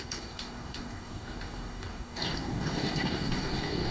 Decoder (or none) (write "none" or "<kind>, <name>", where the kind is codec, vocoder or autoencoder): codec, DAC